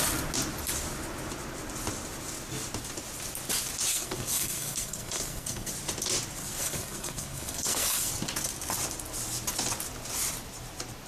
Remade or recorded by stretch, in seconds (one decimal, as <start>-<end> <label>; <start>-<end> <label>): 0.0-3.9 recorded; 3.9-5.7 remade; 5.7-6.4 recorded; 6.4-8.1 remade; 8.1-11.1 recorded